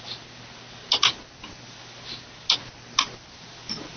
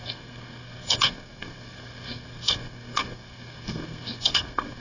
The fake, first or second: second